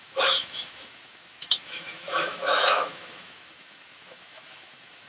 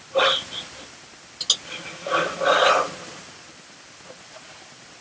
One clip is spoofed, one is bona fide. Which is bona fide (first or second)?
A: second